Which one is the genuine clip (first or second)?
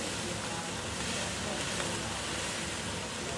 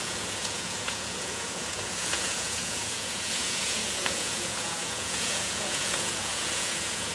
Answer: first